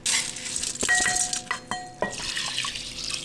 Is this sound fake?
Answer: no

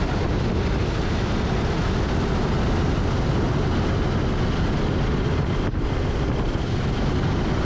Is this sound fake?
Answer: no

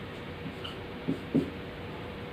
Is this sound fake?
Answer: yes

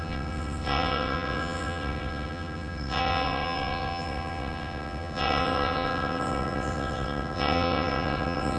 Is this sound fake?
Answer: yes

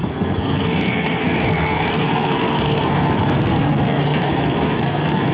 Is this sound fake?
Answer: yes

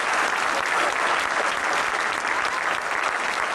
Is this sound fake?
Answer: no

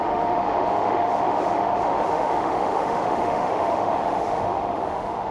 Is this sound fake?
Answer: yes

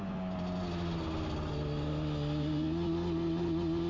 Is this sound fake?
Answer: no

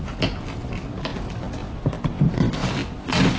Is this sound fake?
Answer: no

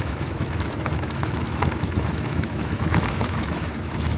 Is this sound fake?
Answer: yes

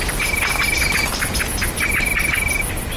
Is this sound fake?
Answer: no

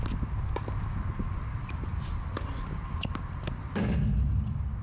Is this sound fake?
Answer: no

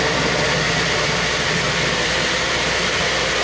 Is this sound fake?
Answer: no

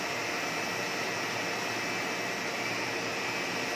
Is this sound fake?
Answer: no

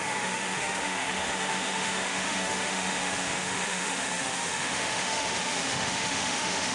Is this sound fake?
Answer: yes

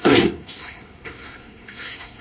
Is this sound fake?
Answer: yes